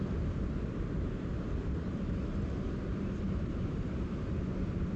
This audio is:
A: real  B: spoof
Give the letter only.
A